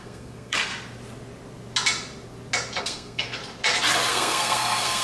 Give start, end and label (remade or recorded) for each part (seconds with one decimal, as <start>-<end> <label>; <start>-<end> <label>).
0.0-0.7 remade; 0.7-2.8 recorded; 2.8-3.4 remade; 3.4-4.1 recorded; 4.1-5.0 remade